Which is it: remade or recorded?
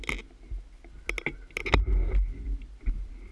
recorded